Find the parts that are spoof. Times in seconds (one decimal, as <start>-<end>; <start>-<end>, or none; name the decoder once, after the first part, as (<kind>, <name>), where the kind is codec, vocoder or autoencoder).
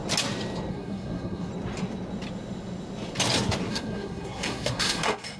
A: 0.7-1.5 (codec, SNAC); 3.7-5.4